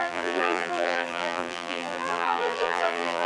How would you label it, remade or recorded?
remade